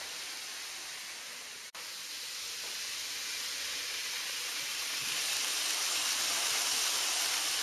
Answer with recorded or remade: recorded